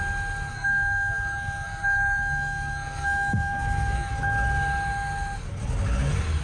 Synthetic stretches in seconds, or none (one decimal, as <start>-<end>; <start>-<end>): 0.5-4.1